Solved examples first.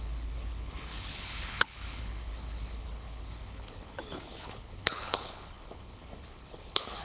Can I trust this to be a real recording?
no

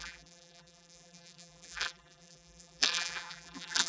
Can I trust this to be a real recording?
no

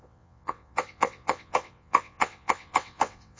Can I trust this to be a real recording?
no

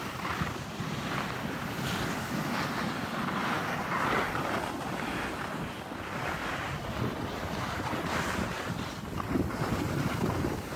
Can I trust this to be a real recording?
yes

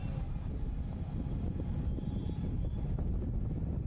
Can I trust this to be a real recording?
yes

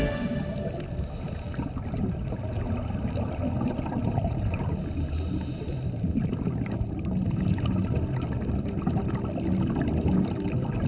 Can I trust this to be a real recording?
yes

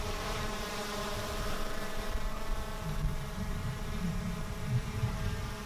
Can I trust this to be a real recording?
no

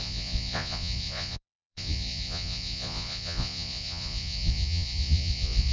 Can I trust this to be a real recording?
no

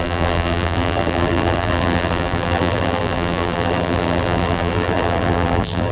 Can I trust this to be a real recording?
no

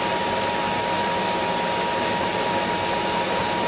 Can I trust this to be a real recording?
yes